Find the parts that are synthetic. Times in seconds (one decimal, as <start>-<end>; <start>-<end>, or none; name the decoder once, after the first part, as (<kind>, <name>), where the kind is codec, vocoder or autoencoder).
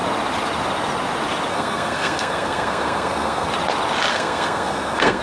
1.5-3.5 (codec, SNAC); 4.1-5.2